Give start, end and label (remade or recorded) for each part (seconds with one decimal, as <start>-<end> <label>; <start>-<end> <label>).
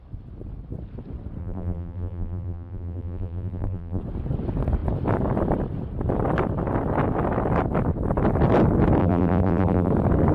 0.0-1.4 recorded; 1.4-4.0 remade; 4.0-9.0 recorded; 9.0-9.9 remade; 9.9-10.3 recorded